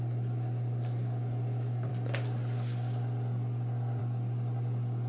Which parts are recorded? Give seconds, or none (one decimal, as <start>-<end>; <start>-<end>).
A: 0.0-5.1